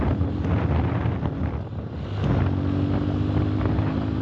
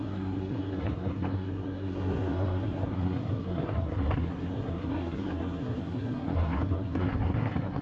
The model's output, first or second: second